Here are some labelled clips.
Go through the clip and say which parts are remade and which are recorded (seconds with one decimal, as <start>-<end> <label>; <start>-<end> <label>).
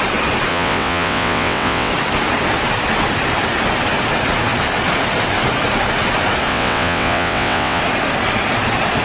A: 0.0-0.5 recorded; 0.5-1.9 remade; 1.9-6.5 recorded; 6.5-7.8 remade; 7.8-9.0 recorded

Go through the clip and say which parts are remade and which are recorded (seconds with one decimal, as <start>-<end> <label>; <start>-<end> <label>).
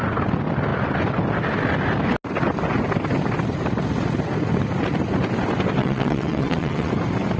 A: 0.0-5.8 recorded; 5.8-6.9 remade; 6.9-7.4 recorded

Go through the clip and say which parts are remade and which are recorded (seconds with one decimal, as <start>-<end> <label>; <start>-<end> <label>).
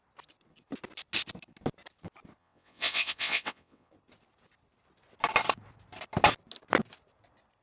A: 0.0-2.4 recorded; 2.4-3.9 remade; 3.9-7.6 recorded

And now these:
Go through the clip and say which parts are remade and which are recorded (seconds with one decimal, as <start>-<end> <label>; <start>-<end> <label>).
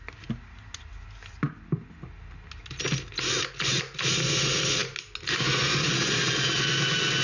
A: 0.0-7.2 recorded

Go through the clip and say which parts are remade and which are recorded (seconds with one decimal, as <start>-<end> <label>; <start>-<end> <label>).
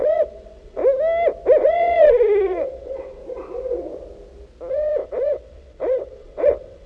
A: 0.0-0.8 remade; 0.8-1.6 recorded; 1.6-3.2 remade; 3.2-4.7 recorded; 4.7-6.9 remade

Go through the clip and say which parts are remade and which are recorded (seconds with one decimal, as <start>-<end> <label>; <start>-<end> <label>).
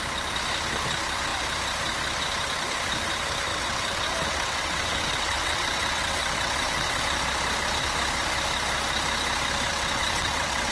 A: 0.0-3.5 recorded; 3.5-7.0 remade; 7.0-9.7 recorded; 9.7-10.7 remade